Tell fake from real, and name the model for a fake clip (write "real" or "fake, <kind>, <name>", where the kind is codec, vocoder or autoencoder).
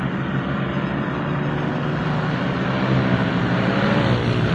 real